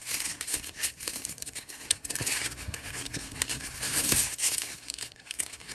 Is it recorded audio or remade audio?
remade